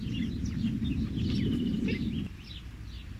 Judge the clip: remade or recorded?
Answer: recorded